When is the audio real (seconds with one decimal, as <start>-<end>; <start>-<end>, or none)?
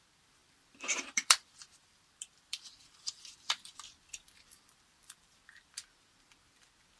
none